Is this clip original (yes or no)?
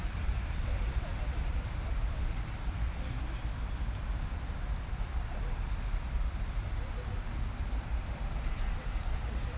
no